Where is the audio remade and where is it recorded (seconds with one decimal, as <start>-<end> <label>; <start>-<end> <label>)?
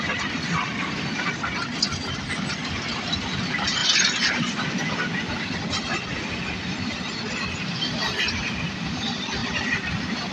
0.0-3.8 recorded; 3.8-4.7 remade; 4.7-9.4 recorded; 9.4-9.9 remade; 9.9-10.3 recorded